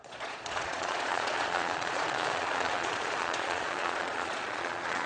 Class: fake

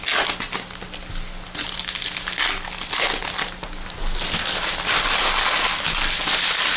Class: real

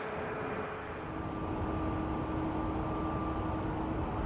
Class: real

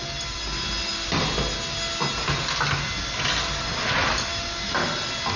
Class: real